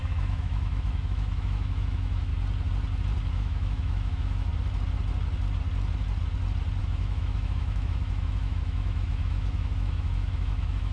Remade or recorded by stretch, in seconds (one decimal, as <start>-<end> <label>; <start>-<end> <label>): 0.0-2.3 remade; 2.3-3.3 recorded; 3.3-4.5 remade; 4.5-6.8 recorded; 6.8-10.9 remade